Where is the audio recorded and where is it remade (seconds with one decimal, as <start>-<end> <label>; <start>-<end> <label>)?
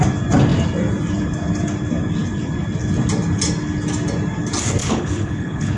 0.0-4.8 recorded; 4.8-5.8 remade